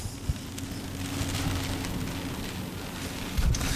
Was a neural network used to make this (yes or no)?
no